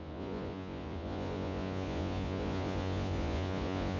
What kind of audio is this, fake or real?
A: fake